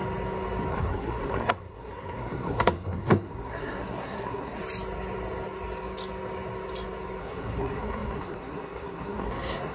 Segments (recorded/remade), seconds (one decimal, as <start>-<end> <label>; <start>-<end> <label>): 0.0-0.7 recorded; 0.7-4.6 remade; 4.6-7.2 recorded; 7.2-9.7 remade